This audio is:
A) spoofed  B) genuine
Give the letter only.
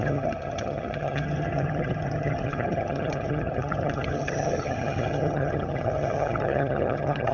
A